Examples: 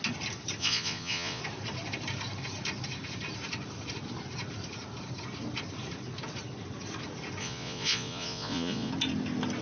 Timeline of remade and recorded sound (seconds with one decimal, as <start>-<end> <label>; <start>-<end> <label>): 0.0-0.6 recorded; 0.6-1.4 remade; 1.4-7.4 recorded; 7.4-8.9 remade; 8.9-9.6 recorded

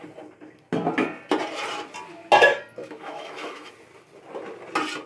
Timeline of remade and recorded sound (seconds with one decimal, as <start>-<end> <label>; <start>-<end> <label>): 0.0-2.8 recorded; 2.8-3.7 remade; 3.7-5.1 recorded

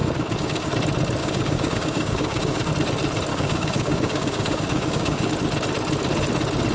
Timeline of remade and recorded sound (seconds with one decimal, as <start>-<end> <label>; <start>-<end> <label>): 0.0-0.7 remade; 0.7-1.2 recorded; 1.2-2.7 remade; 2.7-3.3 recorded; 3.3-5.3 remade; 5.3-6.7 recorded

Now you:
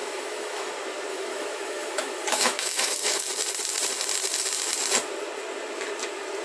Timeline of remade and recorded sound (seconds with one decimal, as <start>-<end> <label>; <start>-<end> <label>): 0.0-0.7 remade; 0.7-1.1 recorded; 1.1-3.2 remade; 3.2-6.4 recorded

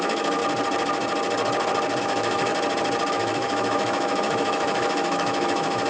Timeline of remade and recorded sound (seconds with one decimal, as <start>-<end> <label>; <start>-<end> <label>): 0.0-0.4 remade; 0.4-2.0 recorded; 2.0-2.5 remade; 2.5-3.1 recorded; 3.1-5.9 remade

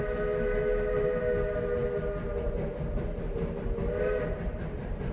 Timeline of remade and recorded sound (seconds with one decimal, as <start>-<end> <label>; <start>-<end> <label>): 0.0-5.1 recorded